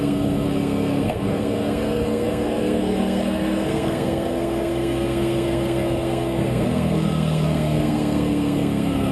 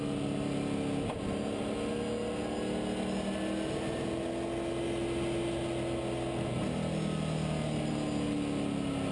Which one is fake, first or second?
first